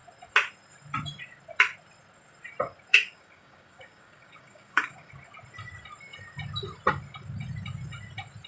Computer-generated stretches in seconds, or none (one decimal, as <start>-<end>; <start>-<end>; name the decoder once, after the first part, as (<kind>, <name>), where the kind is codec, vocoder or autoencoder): 2.9-5.1 (codec, DAC)